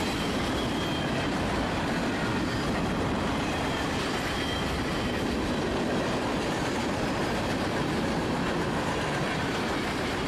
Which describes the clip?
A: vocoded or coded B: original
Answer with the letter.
B